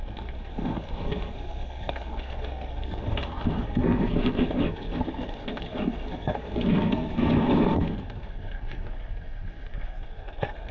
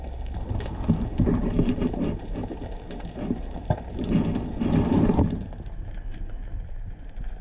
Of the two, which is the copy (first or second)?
first